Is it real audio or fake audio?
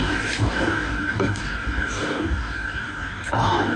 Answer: fake